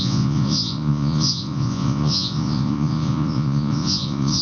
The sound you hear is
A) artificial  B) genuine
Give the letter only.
A